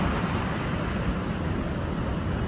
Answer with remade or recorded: recorded